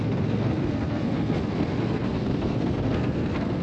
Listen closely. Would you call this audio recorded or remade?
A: remade